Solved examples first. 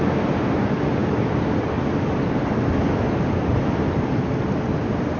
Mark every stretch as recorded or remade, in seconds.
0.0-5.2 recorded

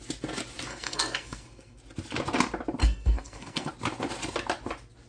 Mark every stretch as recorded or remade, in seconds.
0.0-0.7 recorded; 0.7-1.8 remade; 1.8-2.8 recorded; 2.8-3.7 remade; 3.7-5.1 recorded

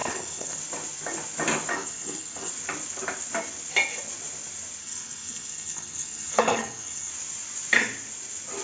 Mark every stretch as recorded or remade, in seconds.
0.0-0.6 remade; 0.6-1.7 recorded; 1.7-2.5 remade; 2.5-4.8 recorded; 4.8-7.1 remade; 7.1-8.6 recorded